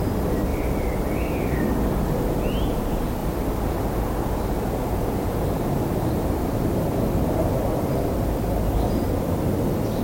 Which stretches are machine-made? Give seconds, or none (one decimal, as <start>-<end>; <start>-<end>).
0.5-1.7; 3.2-3.9